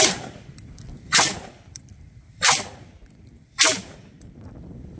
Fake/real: fake